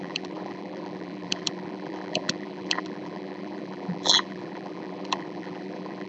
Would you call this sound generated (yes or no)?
yes